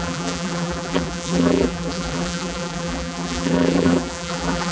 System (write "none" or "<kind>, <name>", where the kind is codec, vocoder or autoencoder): vocoder, BigVGAN v2